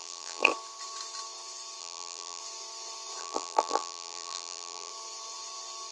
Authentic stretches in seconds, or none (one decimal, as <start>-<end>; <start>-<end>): 0.5-1.8; 2.4-3.2; 4.9-5.9